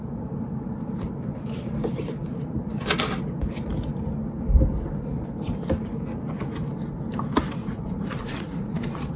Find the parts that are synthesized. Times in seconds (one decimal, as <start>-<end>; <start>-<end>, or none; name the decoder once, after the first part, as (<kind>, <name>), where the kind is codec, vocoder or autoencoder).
7.6-9.2 (vocoder, Vocos)